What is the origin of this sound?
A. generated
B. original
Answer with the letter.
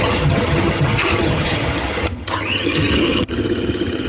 A